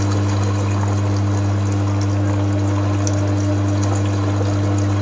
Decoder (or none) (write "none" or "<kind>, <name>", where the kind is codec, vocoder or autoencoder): none